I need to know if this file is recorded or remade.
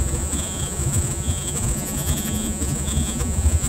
remade